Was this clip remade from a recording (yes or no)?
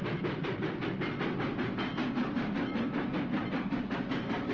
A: no